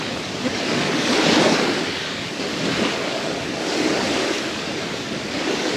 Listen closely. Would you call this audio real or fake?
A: fake